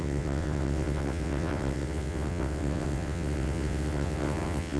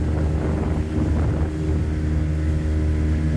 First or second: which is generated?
first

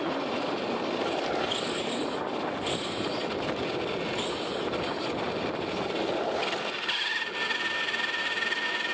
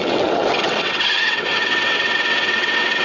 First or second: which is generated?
second